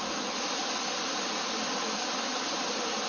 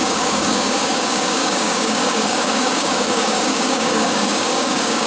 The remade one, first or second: second